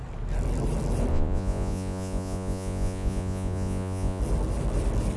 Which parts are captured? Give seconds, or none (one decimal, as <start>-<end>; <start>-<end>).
0.0-1.1; 4.2-5.2